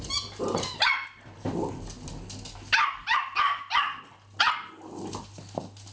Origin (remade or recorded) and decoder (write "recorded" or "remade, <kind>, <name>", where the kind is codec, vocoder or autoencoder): recorded